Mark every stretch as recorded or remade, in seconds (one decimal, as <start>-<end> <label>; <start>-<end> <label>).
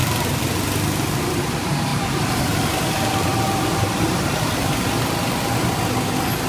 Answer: 0.0-1.9 recorded; 1.9-2.4 remade; 2.4-3.3 recorded; 3.3-4.7 remade; 4.7-6.5 recorded